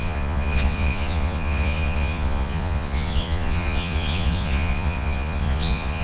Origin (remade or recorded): remade